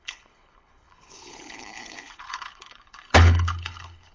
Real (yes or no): no